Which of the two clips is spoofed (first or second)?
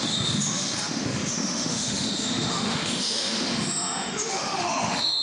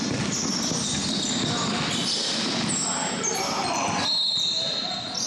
first